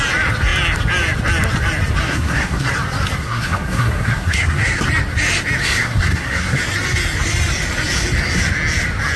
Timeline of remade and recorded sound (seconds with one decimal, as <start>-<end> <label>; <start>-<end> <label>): 0.0-2.0 recorded; 2.0-2.7 remade; 2.7-3.2 recorded; 3.2-4.8 remade; 4.8-5.6 recorded; 5.6-6.6 remade; 6.6-9.2 recorded